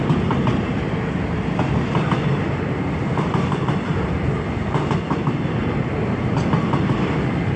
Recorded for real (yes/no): yes